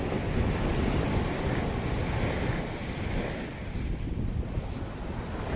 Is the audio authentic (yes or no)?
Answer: yes